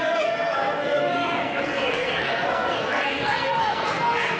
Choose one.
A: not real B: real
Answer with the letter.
A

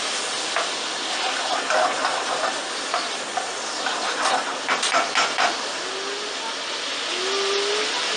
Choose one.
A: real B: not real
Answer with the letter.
A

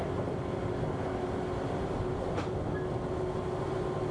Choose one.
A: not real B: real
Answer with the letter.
B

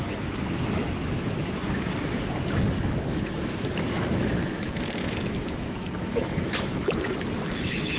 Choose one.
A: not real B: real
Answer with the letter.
A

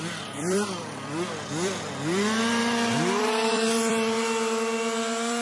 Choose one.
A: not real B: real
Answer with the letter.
A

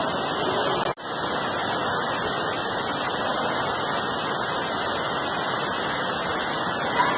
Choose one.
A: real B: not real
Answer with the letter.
A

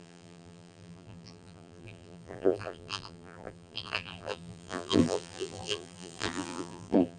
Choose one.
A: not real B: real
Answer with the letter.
A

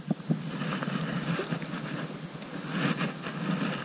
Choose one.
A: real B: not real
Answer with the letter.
A